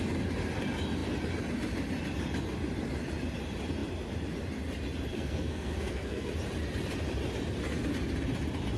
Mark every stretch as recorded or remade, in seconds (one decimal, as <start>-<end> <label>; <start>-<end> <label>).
0.0-5.1 recorded; 5.1-6.3 remade; 6.3-8.8 recorded